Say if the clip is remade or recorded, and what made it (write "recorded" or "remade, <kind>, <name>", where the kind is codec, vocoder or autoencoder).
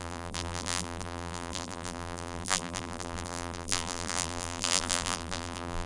remade, vocoder, BigVGAN v2